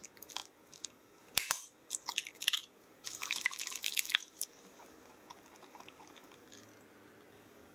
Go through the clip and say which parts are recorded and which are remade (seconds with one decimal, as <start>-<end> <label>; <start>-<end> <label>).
0.0-6.7 remade; 6.7-7.3 recorded; 7.3-7.7 remade